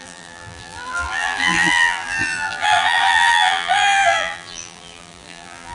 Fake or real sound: fake